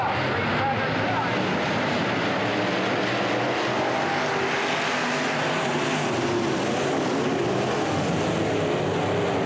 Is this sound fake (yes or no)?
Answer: no